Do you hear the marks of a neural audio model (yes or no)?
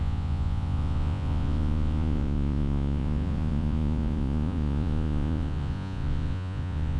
yes